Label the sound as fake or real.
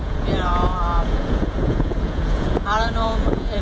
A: fake